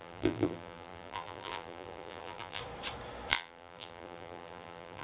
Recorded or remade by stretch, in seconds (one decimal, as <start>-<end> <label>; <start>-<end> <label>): 0.0-2.6 remade; 2.6-3.3 recorded; 3.3-5.0 remade

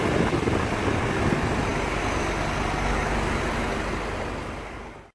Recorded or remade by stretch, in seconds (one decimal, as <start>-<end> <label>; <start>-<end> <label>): 0.0-5.1 recorded

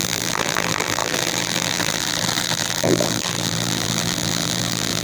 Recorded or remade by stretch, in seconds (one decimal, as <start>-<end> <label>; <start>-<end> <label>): 0.0-5.0 remade

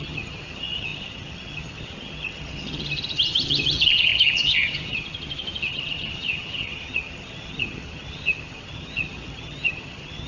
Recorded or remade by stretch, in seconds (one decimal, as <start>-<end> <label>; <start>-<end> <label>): 0.0-10.3 remade

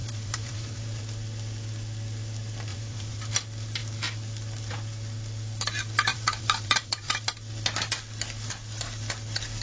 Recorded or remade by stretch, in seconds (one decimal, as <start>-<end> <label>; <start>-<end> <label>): 0.0-1.0 remade; 1.0-2.7 recorded; 2.7-3.3 remade; 3.3-6.1 recorded; 6.1-7.1 remade; 7.1-9.6 recorded

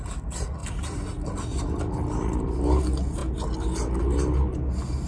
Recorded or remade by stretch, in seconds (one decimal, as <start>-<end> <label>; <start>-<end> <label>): 0.0-5.1 recorded

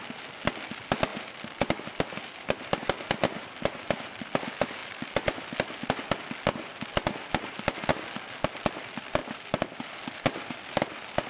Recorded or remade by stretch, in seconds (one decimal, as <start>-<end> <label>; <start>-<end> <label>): 0.0-11.3 recorded

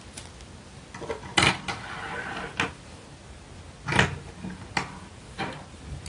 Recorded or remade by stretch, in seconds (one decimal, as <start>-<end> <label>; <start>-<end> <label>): 0.0-6.1 recorded